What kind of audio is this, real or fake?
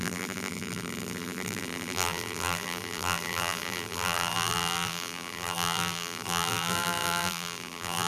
fake